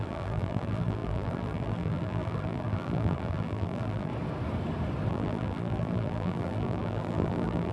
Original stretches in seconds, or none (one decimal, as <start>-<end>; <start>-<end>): 4.1-5.1